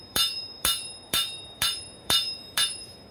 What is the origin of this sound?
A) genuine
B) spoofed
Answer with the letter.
B